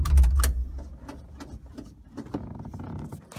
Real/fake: real